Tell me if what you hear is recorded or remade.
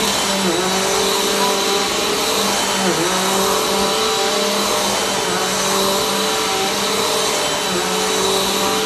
recorded